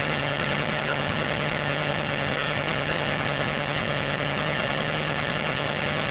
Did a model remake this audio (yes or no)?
yes